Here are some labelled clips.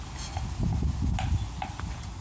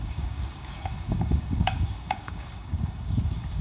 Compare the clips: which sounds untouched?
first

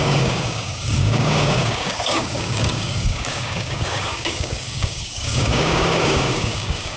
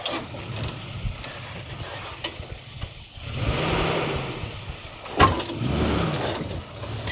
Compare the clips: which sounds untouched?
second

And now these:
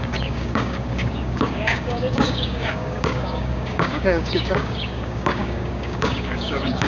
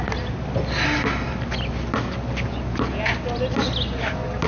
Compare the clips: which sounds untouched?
second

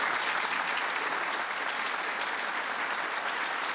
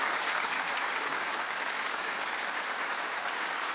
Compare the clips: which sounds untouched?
first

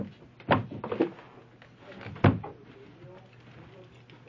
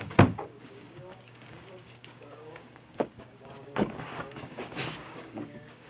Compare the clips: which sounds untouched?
first